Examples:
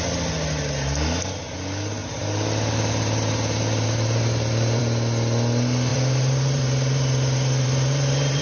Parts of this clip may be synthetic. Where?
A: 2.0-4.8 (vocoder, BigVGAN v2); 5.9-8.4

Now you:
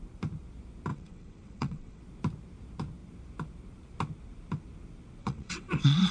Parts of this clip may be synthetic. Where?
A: 0.9-2.0 (vocoder, WaveNeXt); 5.2-6.1

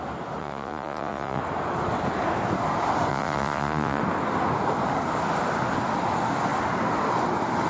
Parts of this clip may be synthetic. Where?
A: 0.4-1.4 (vocoder, Vocos); 3.1-4.0

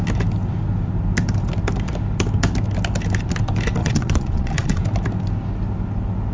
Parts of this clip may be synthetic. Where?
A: 3.8-4.8 (vocoder, Vocos)